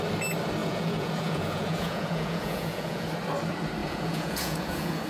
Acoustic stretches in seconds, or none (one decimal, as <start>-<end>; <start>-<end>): 0.0-0.6; 3.1-3.8